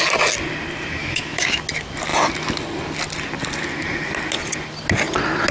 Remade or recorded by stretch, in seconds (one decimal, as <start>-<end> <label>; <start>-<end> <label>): 0.0-1.0 recorded; 1.0-1.6 remade; 1.6-5.5 recorded